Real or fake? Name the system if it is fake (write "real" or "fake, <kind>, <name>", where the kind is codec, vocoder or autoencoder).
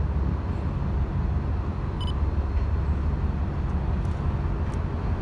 real